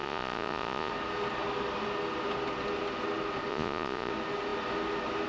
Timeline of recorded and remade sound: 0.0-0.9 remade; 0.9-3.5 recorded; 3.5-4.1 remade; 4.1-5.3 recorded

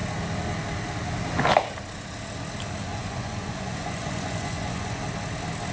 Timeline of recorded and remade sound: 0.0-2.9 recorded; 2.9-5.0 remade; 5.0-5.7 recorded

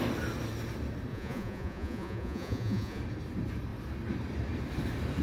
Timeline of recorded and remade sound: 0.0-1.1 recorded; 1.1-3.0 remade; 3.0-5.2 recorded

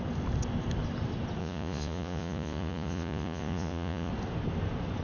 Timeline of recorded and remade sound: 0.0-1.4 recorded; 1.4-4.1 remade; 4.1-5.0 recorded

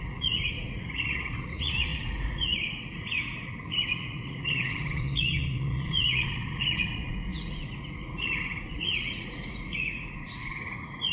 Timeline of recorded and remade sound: 0.0-11.1 remade

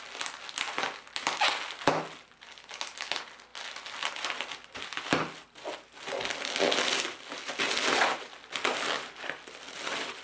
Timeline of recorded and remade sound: 0.0-10.2 recorded